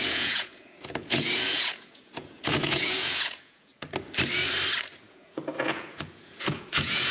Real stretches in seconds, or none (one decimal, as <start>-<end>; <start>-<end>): 3.7-5.1